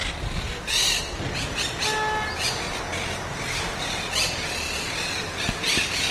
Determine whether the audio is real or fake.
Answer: real